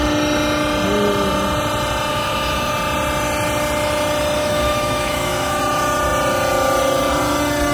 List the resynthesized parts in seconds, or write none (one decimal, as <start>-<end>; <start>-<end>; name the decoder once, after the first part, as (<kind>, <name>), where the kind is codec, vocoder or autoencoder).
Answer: 2.1-2.7 (autoencoder, DAC-VAE); 4.4-5.6